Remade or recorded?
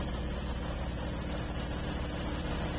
recorded